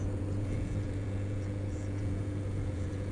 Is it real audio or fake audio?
fake